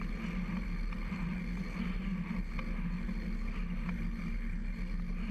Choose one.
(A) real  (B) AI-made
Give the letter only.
A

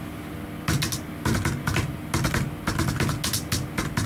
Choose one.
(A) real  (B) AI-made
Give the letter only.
A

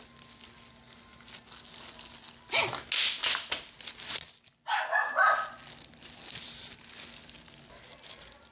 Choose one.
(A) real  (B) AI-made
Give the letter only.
A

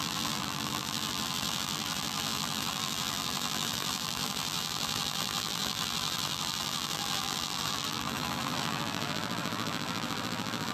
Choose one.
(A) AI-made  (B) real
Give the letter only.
A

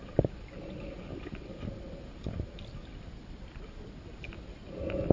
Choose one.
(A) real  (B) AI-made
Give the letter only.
A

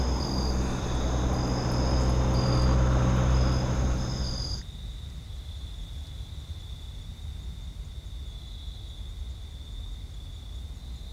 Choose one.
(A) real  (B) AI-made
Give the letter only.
A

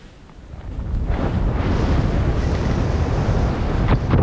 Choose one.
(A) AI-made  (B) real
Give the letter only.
B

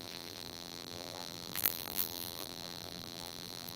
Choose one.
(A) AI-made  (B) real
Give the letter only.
A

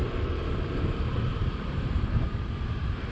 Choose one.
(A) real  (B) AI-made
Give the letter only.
B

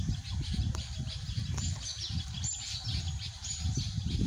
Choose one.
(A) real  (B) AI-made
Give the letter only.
B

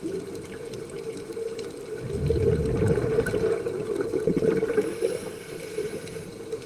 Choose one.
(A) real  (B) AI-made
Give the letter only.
A